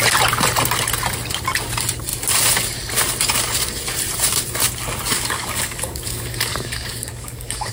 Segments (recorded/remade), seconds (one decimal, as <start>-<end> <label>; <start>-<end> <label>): 0.0-5.1 recorded; 5.1-7.7 remade